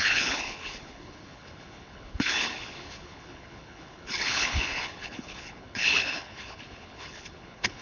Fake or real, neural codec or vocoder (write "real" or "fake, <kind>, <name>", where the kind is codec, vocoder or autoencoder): fake, codec, HILCodec